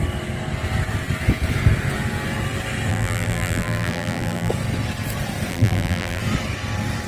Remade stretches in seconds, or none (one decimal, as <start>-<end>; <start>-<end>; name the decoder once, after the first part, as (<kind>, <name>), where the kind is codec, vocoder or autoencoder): 2.9-4.5 (vocoder, BigVGAN v2); 5.5-6.2